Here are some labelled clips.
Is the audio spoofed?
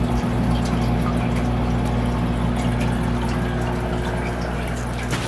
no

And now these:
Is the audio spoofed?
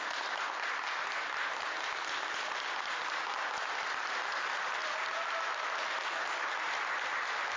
no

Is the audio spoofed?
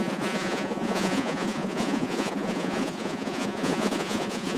yes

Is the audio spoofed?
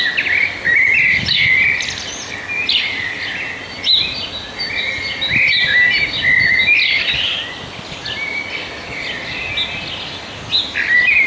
no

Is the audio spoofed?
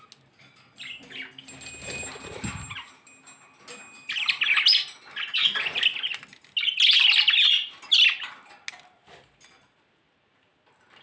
no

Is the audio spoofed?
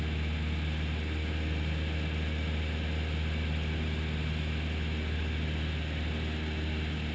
no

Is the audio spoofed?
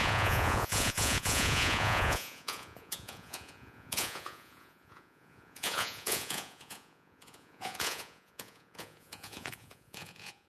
yes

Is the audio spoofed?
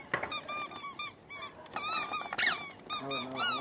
no